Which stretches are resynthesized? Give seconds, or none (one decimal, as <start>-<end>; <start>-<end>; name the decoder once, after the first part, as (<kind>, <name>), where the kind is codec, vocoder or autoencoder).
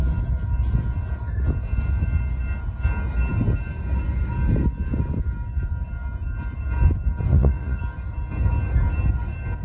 7.3-7.8 (vocoder, Vocos)